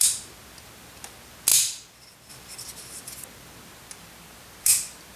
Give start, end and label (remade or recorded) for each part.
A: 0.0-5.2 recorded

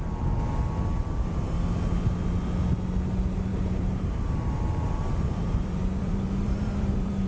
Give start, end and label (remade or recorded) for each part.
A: 0.0-3.5 recorded; 3.5-7.3 remade

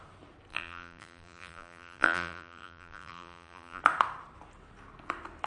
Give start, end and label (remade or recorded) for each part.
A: 0.0-0.5 recorded; 0.5-3.8 remade; 3.8-5.5 recorded

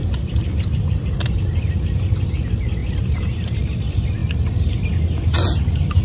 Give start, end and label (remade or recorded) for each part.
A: 0.0-1.7 remade; 1.7-2.8 recorded; 2.8-3.5 remade; 3.5-6.0 recorded

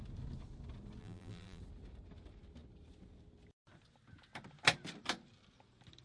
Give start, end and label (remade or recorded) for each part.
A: 0.0-1.0 recorded; 1.0-1.6 remade; 1.6-6.0 recorded

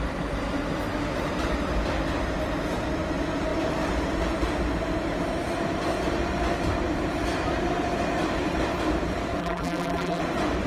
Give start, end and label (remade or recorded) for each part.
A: 0.0-9.4 recorded; 9.4-10.2 remade; 10.2-10.7 recorded